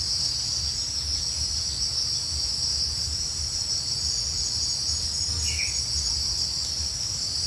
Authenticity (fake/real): real